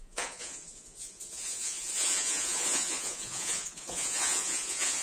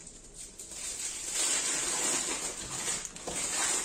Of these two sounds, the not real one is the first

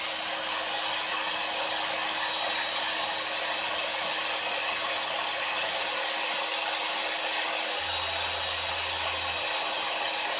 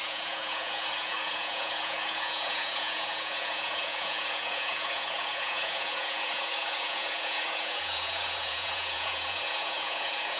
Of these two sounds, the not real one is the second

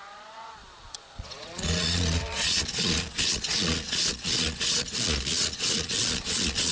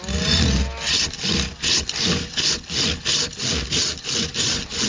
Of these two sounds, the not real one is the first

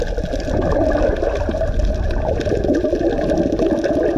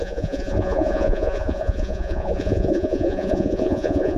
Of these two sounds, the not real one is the second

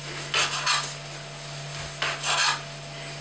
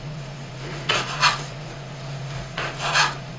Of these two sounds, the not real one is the second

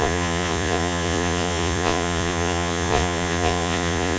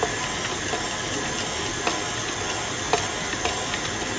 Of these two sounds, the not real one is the first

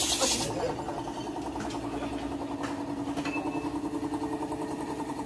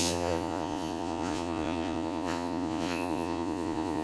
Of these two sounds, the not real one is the second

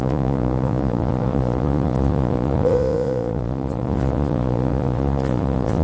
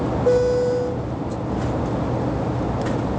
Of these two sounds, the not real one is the first